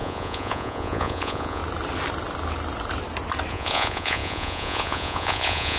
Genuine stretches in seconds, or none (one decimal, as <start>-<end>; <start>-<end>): 1.6-3.5